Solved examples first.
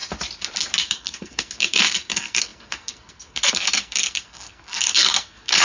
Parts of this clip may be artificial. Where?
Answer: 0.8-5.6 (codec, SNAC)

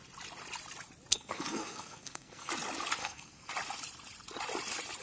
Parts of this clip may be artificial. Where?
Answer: 1.1-2.5 (codec, SNAC); 3.0-3.5

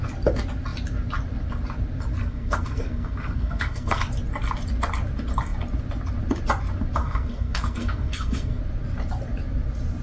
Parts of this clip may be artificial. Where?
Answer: 2.2-4.1 (codec, SNAC); 7.0-8.6

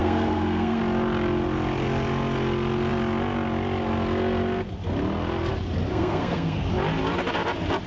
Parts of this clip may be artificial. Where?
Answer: 0.0-0.8 (codec, SNAC); 5.9-6.7